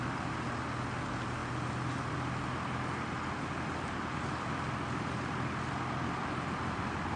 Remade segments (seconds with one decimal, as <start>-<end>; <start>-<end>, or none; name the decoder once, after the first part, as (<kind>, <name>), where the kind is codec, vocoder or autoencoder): none